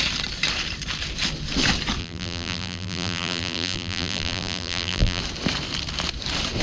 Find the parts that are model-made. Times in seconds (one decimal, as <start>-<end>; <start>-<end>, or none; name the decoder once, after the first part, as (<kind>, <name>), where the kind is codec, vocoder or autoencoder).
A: 2.0-5.2 (vocoder, BigVGAN v2)